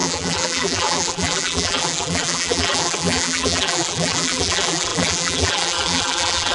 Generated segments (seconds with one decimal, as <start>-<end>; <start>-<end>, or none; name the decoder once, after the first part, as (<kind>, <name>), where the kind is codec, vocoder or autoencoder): 0.0-6.5 (vocoder, BigVGAN v2)